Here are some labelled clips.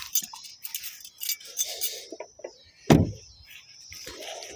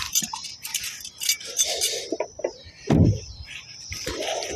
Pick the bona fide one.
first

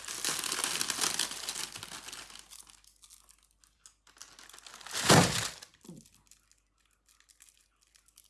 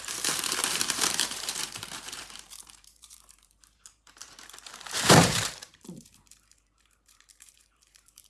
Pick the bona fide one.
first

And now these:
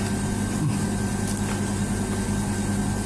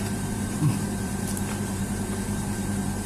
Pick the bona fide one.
first